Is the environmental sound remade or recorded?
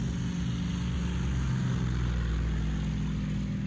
recorded